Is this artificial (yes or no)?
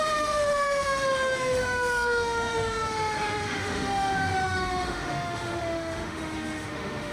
yes